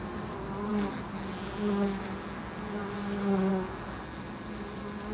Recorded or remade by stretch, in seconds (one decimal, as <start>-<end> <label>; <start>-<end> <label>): 0.0-5.1 recorded